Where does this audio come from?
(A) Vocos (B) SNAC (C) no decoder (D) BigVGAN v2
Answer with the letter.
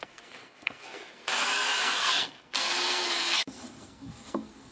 B